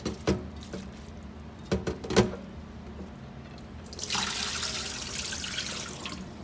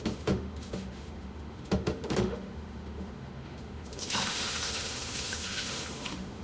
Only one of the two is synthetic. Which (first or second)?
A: second